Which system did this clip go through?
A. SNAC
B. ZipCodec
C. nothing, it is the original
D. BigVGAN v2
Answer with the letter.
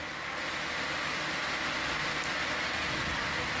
C